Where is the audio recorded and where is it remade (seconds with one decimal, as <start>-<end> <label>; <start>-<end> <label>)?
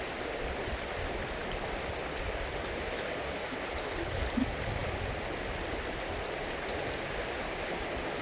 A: 0.0-8.2 recorded